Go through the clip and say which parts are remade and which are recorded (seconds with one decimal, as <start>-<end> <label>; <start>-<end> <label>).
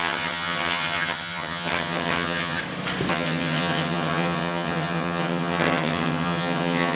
0.0-2.6 remade; 2.6-3.1 recorded; 3.1-7.0 remade